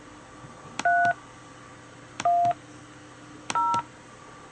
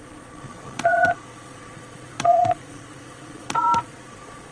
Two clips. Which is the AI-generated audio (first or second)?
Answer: second